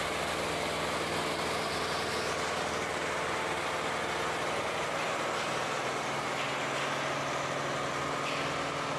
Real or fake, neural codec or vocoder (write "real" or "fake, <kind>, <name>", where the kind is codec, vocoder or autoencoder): real